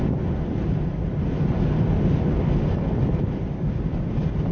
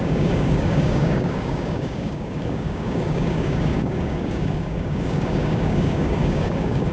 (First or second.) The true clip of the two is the first